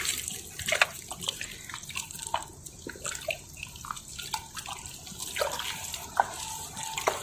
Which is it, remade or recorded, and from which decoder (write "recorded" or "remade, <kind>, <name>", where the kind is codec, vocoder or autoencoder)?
recorded